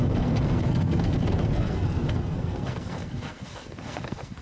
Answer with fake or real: fake